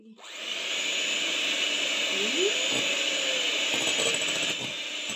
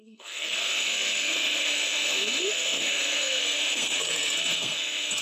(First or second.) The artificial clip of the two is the second